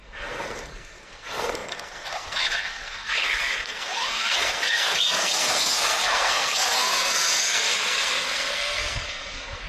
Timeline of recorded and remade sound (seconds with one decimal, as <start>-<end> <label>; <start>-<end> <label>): 0.0-9.7 remade